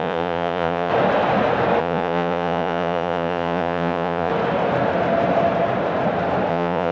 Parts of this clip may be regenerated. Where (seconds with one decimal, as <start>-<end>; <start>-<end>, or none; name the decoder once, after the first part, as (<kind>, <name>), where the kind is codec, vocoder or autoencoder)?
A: 0.0-0.9 (vocoder, Vocos); 1.8-4.3; 6.5-6.9